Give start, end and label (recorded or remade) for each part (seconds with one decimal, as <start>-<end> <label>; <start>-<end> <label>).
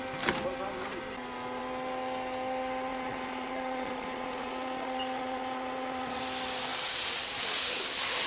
0.0-2.9 recorded; 2.9-6.2 remade; 6.2-8.3 recorded